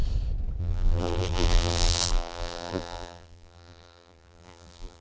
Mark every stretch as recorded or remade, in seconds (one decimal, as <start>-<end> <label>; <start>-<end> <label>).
0.0-0.6 recorded; 0.6-5.0 remade